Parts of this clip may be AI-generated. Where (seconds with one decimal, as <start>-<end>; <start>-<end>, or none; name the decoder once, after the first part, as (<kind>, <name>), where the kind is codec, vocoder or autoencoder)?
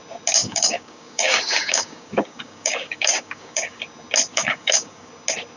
0.4-3.8 (codec, DAC); 4.3-5.1